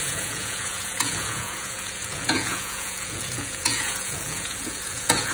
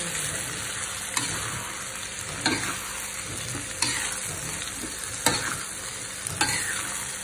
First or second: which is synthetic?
first